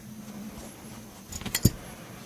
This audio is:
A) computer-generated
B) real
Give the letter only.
B